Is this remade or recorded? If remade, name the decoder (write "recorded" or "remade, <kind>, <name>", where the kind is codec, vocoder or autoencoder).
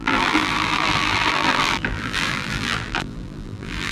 remade, vocoder, BigVGAN v2